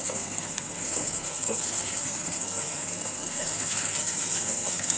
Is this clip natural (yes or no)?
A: no